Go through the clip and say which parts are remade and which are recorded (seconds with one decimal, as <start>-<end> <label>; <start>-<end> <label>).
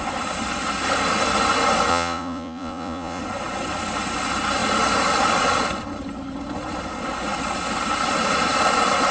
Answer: 0.0-1.9 recorded; 1.9-3.2 remade; 3.2-9.1 recorded